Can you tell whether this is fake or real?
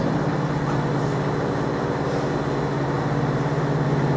real